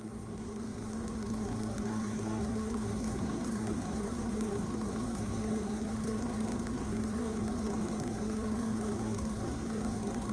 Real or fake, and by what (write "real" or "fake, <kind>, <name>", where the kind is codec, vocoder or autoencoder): fake, codec, SNAC